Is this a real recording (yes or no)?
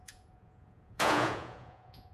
no